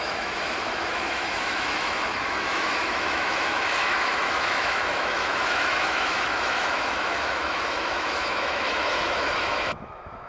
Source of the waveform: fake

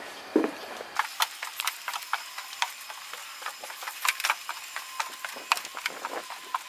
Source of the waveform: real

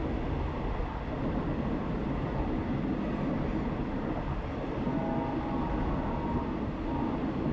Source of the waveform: real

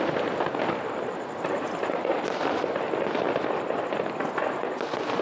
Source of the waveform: real